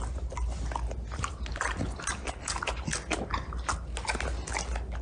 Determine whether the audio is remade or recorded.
recorded